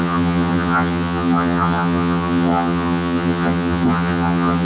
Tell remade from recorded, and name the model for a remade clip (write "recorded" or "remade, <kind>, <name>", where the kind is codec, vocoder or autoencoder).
remade, vocoder, HiFi-GAN